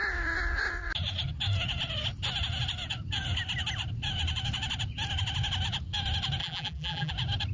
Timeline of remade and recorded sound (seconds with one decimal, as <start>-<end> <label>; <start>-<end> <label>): 0.0-6.4 recorded; 6.4-7.1 remade; 7.1-7.5 recorded